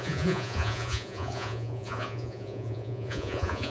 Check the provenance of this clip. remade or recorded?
remade